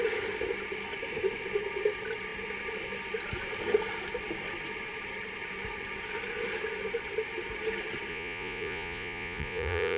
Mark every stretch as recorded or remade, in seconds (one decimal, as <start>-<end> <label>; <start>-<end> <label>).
0.0-8.1 recorded; 8.1-10.0 remade